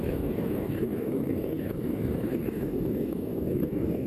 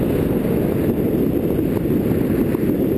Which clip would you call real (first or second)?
second